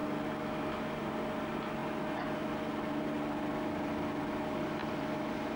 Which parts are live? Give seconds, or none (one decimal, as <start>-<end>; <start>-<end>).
0.0-5.6